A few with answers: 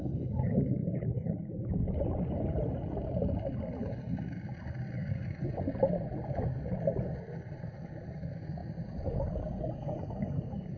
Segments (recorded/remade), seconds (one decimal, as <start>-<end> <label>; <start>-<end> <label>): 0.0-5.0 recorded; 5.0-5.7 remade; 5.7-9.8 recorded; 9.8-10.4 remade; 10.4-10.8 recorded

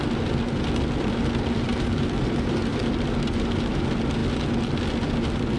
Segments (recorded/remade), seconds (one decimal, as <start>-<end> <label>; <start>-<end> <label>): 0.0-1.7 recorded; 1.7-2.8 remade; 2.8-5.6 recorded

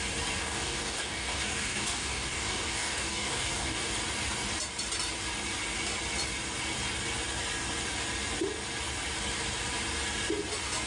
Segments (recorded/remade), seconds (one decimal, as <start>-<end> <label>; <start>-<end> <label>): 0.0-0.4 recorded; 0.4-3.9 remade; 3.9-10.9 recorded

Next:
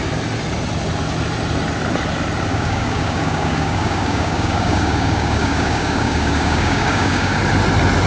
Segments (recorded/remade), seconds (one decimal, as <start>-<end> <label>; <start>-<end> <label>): 0.0-2.5 recorded; 2.5-7.4 remade; 7.4-8.1 recorded

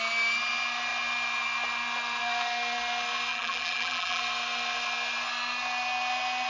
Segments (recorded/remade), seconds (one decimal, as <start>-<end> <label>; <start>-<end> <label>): 0.0-3.3 recorded; 3.3-4.2 remade; 4.2-6.5 recorded